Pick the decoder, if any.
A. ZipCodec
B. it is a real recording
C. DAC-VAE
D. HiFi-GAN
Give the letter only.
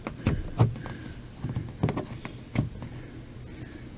B